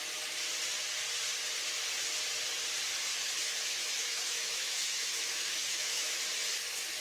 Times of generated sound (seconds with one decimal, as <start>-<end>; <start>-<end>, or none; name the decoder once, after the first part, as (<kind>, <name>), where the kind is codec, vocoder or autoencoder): 3.1-6.2 (autoencoder, DAC-VAE)